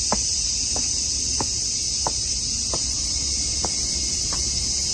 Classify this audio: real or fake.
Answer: real